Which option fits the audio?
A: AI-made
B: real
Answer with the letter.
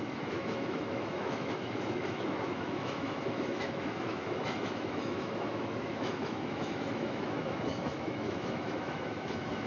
A